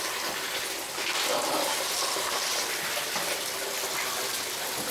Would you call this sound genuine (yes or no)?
yes